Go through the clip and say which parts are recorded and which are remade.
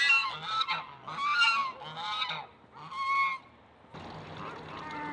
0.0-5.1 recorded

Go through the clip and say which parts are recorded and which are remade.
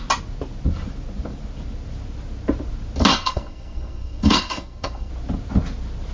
0.0-3.1 recorded; 3.1-5.1 remade; 5.1-6.1 recorded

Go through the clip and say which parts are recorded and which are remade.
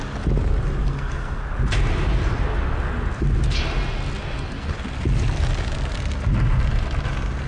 0.0-0.8 recorded; 0.8-1.4 remade; 1.4-4.2 recorded; 4.2-4.8 remade; 4.8-7.5 recorded